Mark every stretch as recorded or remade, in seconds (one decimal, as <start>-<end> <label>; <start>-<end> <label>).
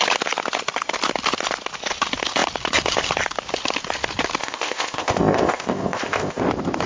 0.0-4.4 recorded; 4.4-6.4 remade; 6.4-6.9 recorded